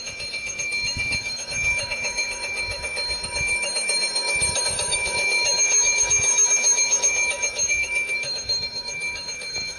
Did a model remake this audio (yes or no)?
yes